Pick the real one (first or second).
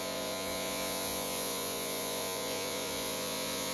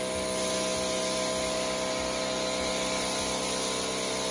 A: second